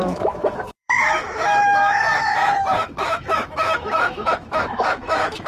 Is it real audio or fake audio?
fake